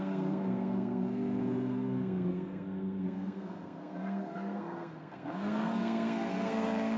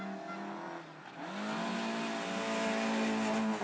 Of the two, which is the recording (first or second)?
second